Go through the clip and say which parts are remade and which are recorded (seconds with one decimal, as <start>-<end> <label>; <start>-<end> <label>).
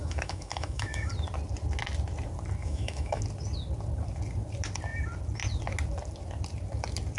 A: 0.0-1.1 remade; 1.1-2.6 recorded; 2.6-3.2 remade; 3.2-7.2 recorded